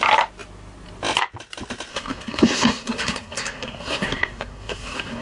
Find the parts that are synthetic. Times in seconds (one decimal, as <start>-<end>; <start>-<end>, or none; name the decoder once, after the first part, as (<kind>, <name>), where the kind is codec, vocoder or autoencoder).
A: 1.9-5.2 (codec, SNAC)